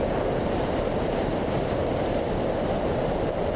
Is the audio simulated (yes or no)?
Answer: no